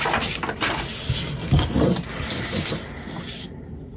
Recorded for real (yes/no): yes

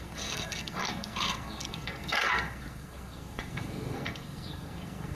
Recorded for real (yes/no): no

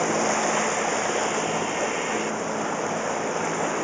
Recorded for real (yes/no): yes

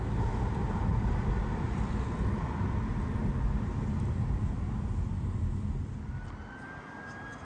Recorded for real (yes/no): yes